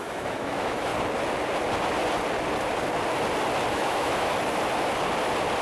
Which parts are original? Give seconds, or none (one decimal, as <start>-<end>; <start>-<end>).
0.9-3.7; 4.3-5.6

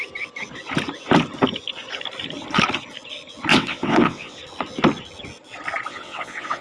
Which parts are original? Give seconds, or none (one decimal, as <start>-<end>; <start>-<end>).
0.0-3.5; 4.4-5.9

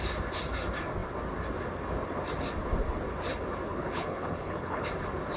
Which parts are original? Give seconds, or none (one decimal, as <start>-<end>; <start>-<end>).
0.0-3.7; 4.9-5.4

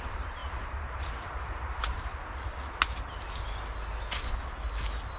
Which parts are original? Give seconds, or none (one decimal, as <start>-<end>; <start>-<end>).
2.1-5.2

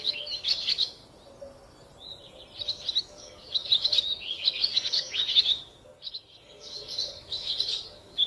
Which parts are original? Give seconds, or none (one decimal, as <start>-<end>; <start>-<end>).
1.0-3.0

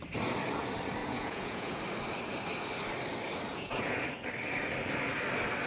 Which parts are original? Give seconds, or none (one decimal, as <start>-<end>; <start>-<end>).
0.0-1.0; 1.8-3.5; 4.0-5.7

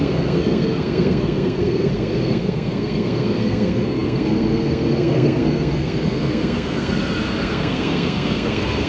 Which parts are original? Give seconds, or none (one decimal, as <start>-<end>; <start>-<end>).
none